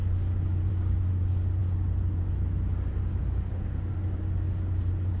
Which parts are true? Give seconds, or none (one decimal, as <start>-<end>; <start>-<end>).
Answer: 0.0-5.2

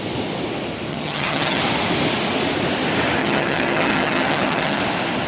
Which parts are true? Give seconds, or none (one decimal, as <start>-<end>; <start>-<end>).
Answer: 0.0-0.9; 1.6-3.2; 4.8-5.3

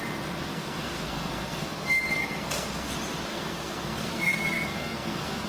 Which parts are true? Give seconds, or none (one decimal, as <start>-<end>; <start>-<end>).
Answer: 0.0-0.5; 2.9-3.3

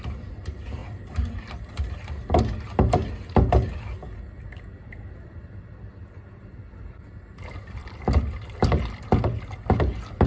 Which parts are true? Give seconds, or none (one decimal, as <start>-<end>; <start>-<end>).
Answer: 0.0-10.3

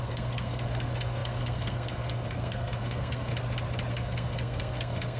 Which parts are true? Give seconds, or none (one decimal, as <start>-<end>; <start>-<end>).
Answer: 3.3-3.9

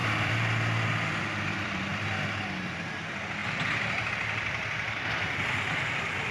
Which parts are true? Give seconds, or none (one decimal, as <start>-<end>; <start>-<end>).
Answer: 1.9-3.0

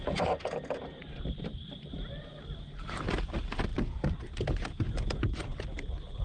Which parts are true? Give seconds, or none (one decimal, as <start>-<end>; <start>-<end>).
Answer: 0.0-6.2